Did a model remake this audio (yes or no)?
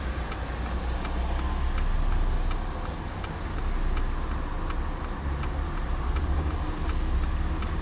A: no